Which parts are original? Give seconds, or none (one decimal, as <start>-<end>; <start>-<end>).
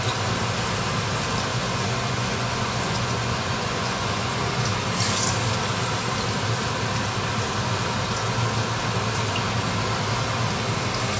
0.0-1.5; 4.6-11.2